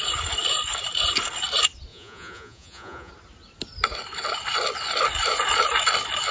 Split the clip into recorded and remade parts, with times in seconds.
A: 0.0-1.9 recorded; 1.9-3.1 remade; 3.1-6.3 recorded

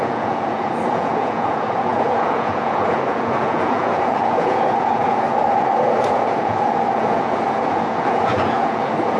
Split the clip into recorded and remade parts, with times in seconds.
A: 0.0-9.2 remade

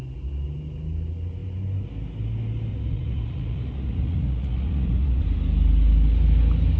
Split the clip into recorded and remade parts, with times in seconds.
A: 0.0-2.7 recorded; 2.7-5.2 remade; 5.2-6.8 recorded

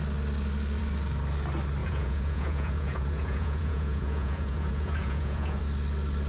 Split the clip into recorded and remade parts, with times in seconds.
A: 0.0-1.8 recorded; 1.8-5.6 remade; 5.6-6.3 recorded